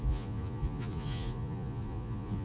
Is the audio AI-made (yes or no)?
yes